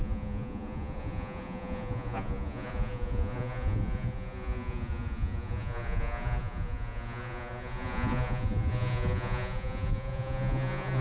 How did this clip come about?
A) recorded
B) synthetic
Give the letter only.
B